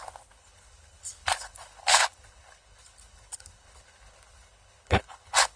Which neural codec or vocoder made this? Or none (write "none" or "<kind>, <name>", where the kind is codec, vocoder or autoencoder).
codec, HILCodec